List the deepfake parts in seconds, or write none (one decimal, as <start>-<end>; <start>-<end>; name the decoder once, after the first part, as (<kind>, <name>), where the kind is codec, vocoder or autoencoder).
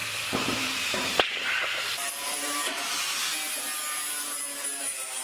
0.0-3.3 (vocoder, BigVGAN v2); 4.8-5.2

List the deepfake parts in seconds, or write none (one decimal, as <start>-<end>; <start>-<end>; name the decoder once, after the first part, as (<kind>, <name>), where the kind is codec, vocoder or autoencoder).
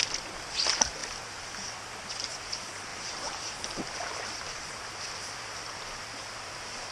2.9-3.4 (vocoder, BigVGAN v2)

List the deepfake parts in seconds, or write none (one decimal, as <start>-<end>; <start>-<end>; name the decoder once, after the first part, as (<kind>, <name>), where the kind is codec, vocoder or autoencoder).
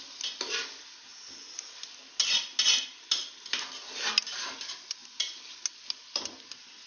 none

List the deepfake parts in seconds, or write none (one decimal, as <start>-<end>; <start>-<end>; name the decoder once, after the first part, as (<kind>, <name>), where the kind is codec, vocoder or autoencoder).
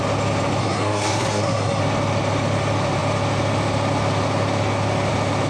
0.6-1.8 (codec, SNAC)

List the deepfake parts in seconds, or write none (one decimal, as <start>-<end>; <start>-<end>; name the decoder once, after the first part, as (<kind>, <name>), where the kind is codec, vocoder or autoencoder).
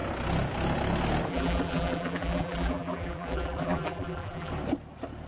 1.3-4.5 (vocoder, BigVGAN v2)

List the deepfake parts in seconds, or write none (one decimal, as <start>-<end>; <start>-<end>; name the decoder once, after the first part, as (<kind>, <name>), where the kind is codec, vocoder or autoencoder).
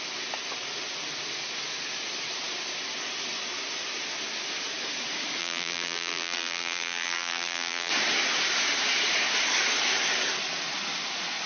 5.4-7.9 (vocoder, BigVGAN v2)